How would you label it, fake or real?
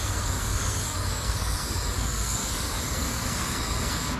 fake